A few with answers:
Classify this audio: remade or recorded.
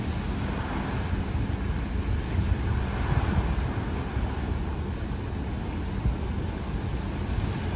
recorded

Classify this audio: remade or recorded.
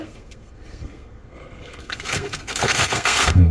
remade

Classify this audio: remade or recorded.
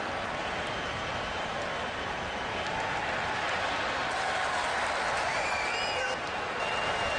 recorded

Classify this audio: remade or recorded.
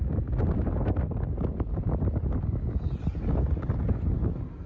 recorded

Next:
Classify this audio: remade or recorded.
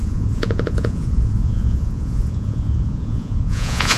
remade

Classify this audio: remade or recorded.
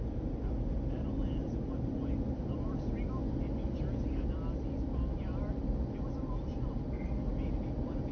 recorded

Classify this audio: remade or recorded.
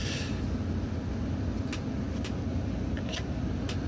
recorded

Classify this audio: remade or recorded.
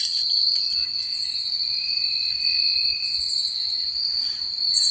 recorded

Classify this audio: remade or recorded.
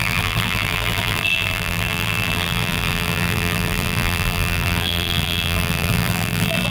remade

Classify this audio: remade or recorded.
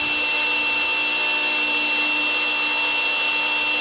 recorded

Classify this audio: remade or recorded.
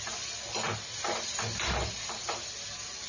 recorded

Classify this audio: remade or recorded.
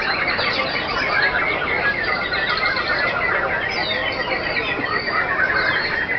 recorded